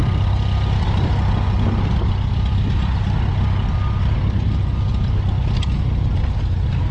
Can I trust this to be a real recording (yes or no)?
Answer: yes